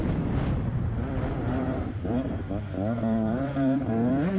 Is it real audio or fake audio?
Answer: fake